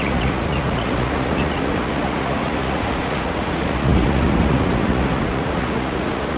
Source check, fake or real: fake